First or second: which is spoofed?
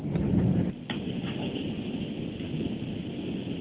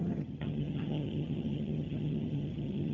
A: second